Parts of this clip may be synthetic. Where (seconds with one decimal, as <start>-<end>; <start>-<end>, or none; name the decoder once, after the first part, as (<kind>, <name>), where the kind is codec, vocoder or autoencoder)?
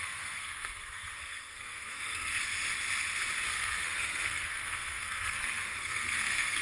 0.0-2.4 (codec, SNAC); 3.5-6.6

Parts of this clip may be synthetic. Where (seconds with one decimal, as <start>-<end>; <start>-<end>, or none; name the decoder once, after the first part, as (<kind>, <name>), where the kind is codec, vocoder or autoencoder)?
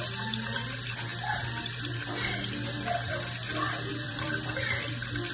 3.9-4.5 (vocoder, BigVGAN v2)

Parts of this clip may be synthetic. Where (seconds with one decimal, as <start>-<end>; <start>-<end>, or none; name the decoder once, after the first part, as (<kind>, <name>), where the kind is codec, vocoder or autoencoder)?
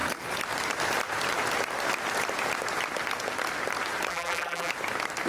4.1-4.7 (vocoder, BigVGAN v2)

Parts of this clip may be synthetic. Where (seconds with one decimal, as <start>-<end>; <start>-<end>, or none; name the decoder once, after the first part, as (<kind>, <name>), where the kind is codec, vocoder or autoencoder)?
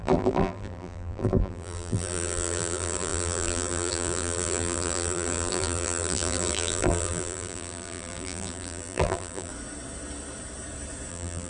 0.0-9.5 (vocoder, BigVGAN v2); 11.1-11.5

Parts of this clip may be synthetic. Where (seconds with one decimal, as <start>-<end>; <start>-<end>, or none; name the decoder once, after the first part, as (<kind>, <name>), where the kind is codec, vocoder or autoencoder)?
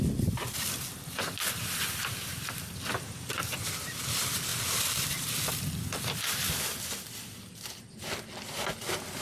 4.5-5.3 (vocoder, BigVGAN v2)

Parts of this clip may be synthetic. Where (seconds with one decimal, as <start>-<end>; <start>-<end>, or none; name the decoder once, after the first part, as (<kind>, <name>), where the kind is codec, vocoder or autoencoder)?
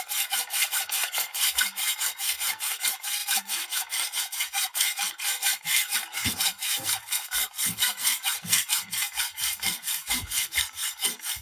0.0-11.4 (codec, SNAC)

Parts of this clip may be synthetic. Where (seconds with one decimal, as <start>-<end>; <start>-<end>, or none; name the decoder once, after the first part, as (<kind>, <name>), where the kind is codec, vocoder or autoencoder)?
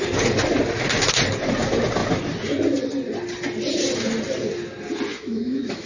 5.1-5.9 (autoencoder, DAC-VAE)